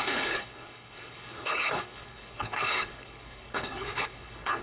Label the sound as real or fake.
fake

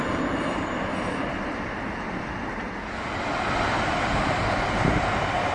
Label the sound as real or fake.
real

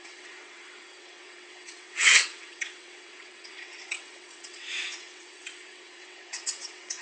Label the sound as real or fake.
fake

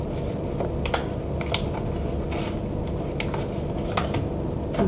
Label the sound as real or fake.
real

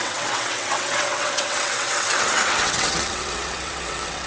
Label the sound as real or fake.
fake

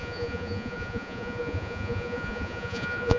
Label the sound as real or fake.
fake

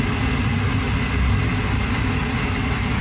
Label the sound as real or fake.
real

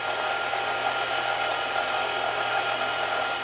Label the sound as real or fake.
real